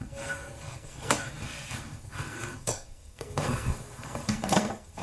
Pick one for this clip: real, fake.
fake